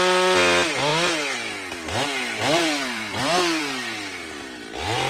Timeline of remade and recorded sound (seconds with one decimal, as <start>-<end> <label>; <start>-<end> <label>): 0.0-2.6 recorded; 2.6-3.6 remade; 3.6-5.1 recorded